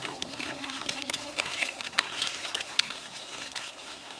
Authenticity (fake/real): fake